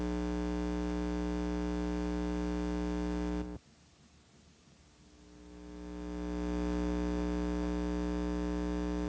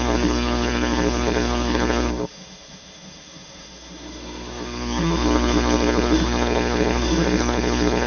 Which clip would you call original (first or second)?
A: first